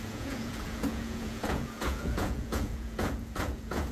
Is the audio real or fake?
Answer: fake